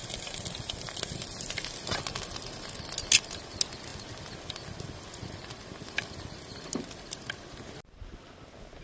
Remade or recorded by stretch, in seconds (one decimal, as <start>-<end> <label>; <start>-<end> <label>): 0.0-8.8 recorded